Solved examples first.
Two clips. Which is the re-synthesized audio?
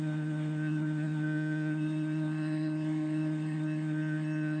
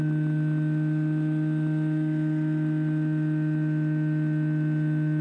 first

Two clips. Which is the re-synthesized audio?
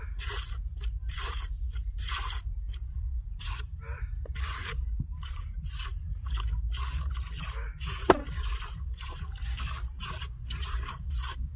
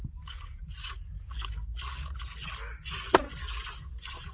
first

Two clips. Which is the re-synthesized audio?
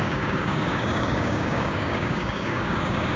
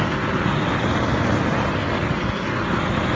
first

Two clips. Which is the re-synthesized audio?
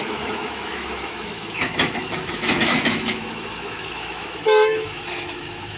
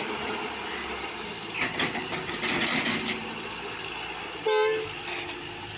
first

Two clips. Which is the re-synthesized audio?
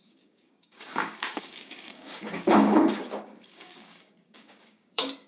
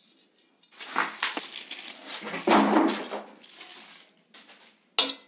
first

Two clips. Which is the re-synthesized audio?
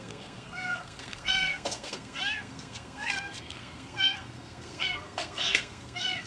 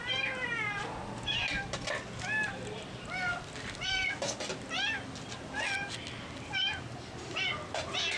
first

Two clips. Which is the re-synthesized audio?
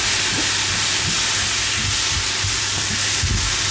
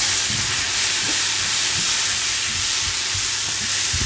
second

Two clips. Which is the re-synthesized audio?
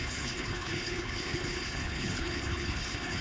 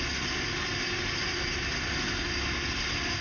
first